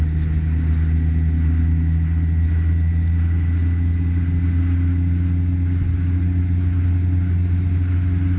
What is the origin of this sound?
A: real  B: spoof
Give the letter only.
A